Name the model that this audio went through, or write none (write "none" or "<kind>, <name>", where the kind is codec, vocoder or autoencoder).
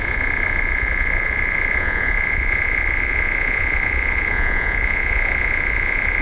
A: vocoder, Vocos